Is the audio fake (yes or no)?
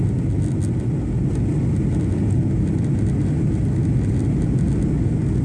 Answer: no